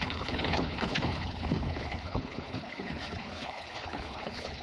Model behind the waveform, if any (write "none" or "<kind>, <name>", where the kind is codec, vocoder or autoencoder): codec, HILCodec